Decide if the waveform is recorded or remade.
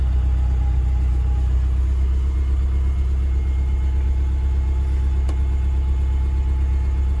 recorded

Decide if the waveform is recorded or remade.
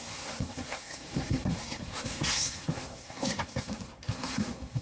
remade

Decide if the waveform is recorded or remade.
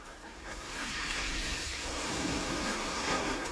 remade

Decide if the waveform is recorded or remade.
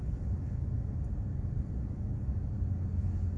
recorded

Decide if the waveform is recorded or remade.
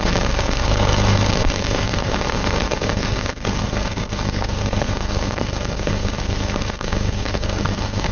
remade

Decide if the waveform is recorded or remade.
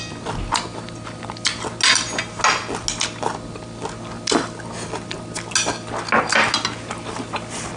recorded